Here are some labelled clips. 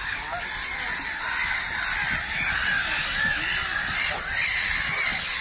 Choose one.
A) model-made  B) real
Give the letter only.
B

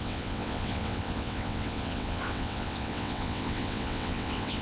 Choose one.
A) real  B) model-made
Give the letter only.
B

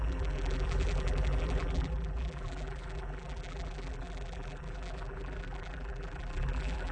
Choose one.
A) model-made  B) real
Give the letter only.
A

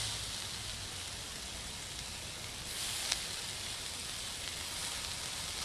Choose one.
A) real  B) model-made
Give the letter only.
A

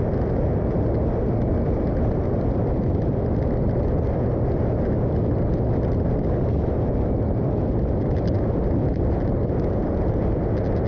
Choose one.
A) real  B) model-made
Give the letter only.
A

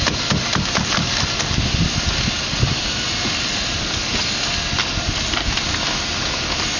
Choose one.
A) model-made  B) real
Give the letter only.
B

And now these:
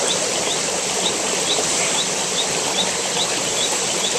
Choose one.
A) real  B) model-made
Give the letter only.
A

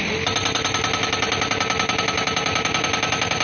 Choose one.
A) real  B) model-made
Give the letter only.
A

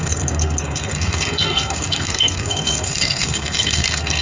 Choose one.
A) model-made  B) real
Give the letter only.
A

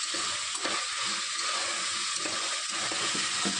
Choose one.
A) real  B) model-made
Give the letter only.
B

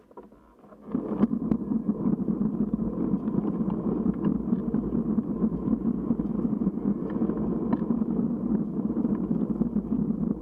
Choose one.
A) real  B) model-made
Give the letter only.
A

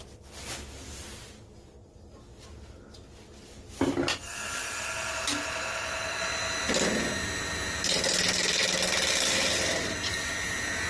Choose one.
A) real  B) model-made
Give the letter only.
A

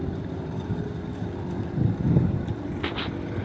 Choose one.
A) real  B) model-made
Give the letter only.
A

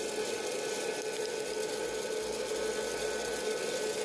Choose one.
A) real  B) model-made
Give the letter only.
A